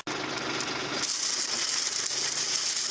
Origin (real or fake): real